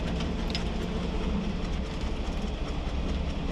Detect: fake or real real